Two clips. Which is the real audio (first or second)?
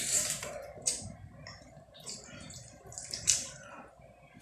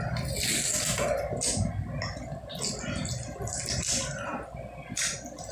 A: second